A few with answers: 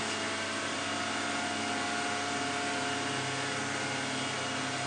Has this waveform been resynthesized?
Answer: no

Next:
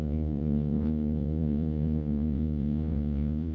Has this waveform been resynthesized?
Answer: yes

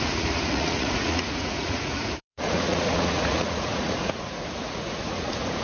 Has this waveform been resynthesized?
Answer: yes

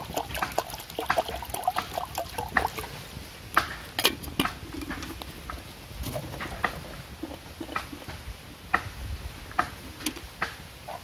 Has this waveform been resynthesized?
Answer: no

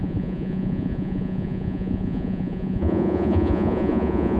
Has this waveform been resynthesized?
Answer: yes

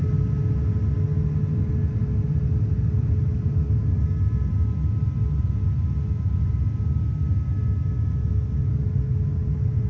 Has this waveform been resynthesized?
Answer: no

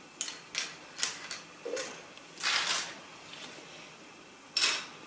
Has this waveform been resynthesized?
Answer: no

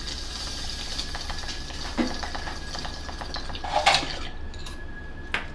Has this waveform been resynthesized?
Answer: no